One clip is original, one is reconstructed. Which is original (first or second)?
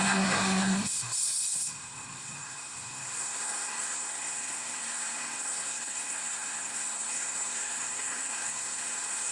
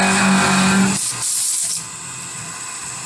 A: second